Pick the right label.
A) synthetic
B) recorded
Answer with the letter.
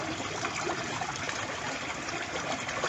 B